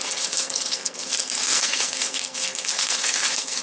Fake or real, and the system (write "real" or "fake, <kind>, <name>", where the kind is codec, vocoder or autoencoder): fake, codec, SNAC